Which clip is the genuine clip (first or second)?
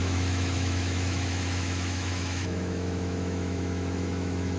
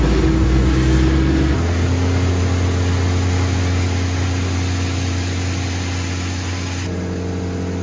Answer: second